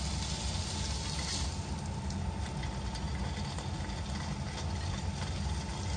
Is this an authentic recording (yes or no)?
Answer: yes